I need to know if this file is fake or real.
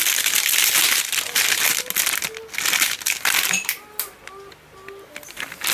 real